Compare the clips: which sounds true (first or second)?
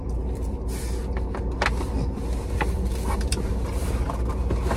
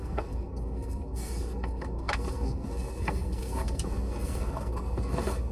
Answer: first